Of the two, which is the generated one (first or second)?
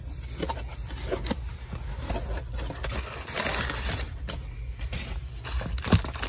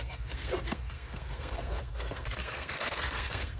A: second